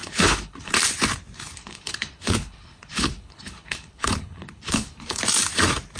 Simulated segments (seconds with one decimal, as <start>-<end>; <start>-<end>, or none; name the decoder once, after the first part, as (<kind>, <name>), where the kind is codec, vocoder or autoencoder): 0.0-0.7 (codec, HILCodec); 1.6-5.2